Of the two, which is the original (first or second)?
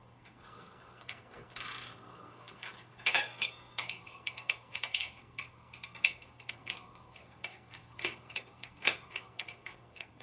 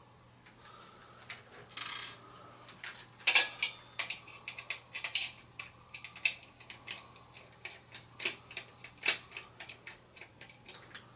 second